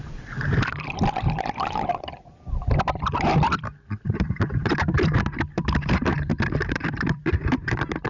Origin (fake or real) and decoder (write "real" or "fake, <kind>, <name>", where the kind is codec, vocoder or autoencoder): fake, vocoder, BigVGAN v2